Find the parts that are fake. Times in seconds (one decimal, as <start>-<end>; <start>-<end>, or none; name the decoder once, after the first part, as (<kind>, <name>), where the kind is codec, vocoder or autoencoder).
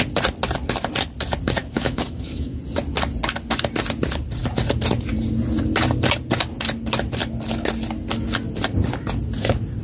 1.6-2.6 (autoencoder, DAC-VAE)